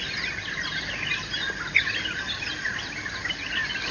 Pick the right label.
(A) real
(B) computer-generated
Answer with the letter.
A